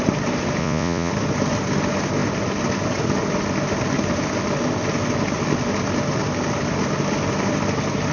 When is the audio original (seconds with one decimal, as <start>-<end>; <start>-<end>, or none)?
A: 0.0-0.6; 1.1-8.1